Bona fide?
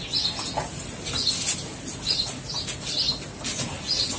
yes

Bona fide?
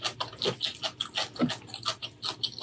yes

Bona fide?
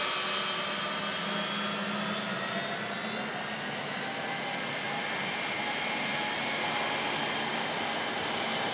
yes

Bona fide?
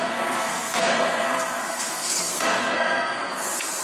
no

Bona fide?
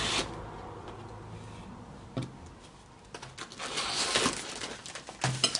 yes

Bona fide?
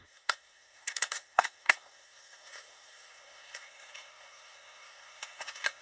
no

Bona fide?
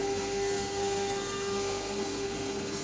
no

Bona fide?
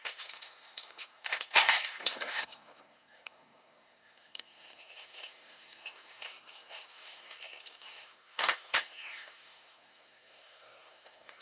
no